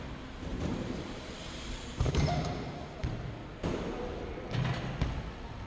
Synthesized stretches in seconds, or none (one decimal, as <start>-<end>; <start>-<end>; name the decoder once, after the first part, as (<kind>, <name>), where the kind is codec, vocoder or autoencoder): 0.5-2.4 (vocoder, BigVGAN v2)